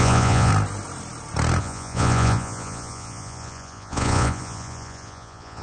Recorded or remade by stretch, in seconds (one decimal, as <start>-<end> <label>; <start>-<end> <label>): 0.0-0.5 remade; 0.5-1.6 recorded; 1.6-5.6 remade